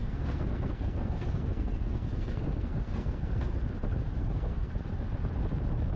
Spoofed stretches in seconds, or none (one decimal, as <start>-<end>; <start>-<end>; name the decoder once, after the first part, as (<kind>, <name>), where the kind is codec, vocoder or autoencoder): 0.0-3.6 (codec, SNAC); 4.2-4.7